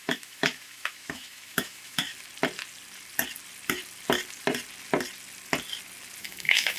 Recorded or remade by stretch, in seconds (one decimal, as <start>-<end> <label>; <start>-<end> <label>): 0.0-2.1 remade; 2.1-6.2 recorded; 6.2-6.8 remade